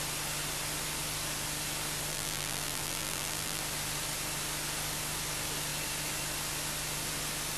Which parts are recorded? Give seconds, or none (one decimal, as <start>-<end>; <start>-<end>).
0.0-2.1; 3.6-7.6